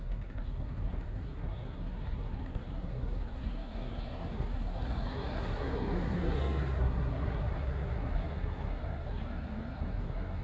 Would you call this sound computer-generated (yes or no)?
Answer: yes